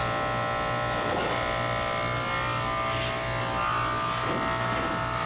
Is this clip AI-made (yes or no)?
no